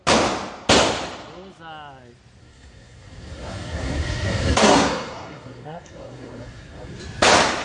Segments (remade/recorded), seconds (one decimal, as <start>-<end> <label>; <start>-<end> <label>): 0.0-2.4 recorded; 2.4-7.0 remade; 7.0-7.6 recorded